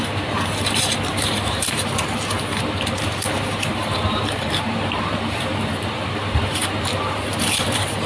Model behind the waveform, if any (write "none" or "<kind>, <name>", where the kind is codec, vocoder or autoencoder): vocoder, BigVGAN v2